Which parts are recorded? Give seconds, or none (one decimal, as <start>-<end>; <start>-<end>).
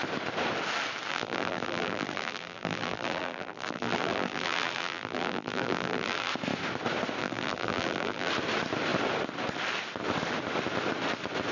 0.0-1.1; 6.3-7.2; 8.3-11.5